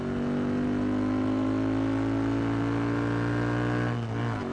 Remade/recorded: recorded